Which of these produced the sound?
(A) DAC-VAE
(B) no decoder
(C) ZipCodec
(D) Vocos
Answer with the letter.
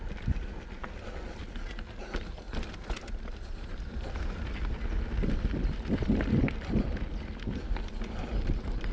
B